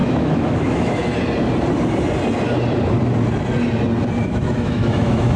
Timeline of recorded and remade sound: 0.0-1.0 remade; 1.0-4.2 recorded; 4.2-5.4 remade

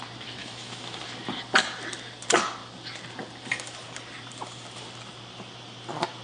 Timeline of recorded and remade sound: 0.0-0.4 recorded; 0.4-1.0 remade; 1.0-6.2 recorded

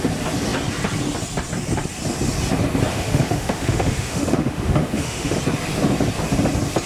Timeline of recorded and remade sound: 0.0-2.9 recorded; 2.9-5.4 remade; 5.4-6.9 recorded